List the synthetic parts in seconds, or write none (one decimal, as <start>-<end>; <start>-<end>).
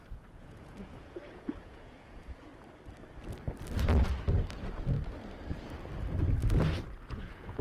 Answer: 0.0-2.5; 7.1-7.6